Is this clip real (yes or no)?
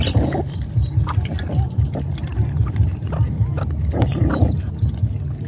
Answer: yes